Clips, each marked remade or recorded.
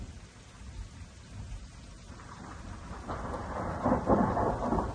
recorded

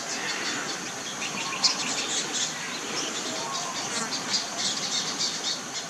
recorded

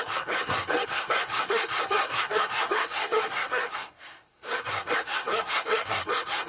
remade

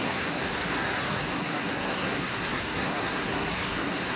remade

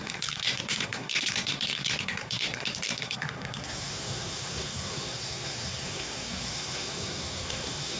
remade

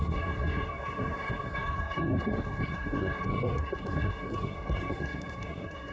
remade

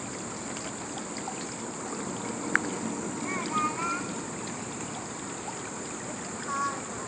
recorded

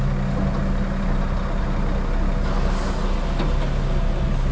recorded